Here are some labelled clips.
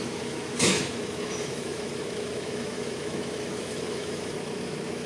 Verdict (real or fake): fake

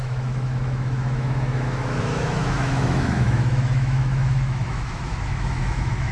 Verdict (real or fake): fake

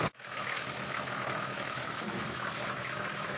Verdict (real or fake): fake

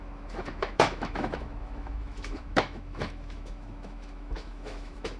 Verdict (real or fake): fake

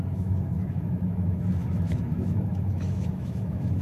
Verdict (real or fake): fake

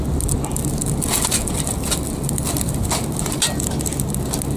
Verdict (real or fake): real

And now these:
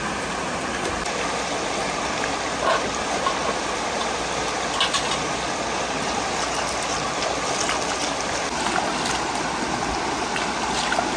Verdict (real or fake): real